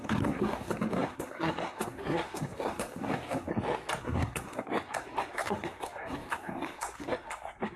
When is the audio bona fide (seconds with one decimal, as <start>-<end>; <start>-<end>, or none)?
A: 3.5-4.0